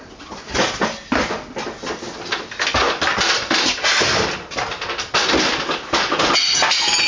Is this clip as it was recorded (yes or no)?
yes